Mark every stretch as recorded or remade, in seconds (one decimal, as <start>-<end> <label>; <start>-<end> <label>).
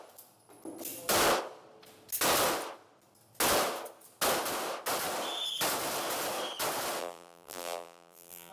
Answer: 0.0-7.0 recorded; 7.0-8.5 remade